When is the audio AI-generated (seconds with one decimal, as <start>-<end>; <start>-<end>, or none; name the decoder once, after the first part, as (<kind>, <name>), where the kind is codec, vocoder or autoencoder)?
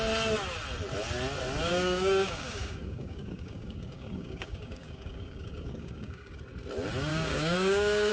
1.7-6.4 (codec, DAC); 7.1-8.1